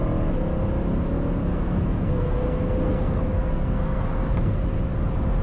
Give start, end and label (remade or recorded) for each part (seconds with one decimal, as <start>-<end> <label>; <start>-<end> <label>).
0.0-1.4 recorded; 1.4-4.6 remade; 4.6-5.4 recorded